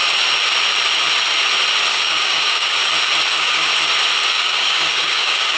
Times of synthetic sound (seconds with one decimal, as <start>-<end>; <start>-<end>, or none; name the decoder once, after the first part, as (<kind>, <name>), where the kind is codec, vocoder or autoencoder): 1.9-2.8 (codec, DAC); 3.3-3.7; 4.3-5.6